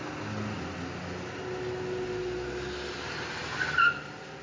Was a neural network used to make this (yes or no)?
no